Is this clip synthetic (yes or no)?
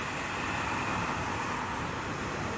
no